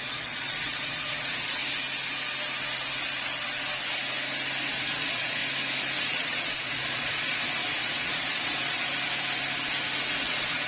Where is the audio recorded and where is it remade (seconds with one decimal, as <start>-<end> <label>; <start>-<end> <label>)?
0.0-1.6 remade; 1.6-4.8 recorded; 4.8-5.4 remade; 5.4-6.0 recorded; 6.0-8.9 remade; 8.9-10.2 recorded; 10.2-10.7 remade